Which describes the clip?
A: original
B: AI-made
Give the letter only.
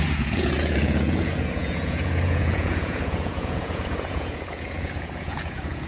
B